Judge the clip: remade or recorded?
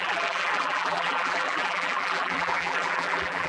remade